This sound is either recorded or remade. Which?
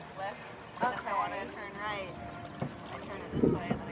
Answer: recorded